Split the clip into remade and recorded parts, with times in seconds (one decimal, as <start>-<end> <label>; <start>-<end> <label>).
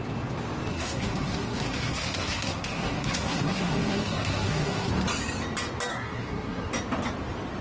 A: 0.0-0.7 recorded; 0.7-4.9 remade; 4.9-5.9 recorded; 5.9-6.7 remade; 6.7-7.6 recorded